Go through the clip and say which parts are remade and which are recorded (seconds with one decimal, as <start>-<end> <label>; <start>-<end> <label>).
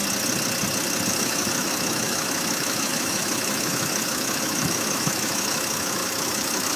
0.0-1.1 recorded; 1.1-6.8 remade